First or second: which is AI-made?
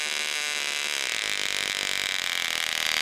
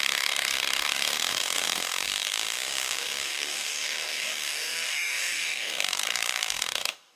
second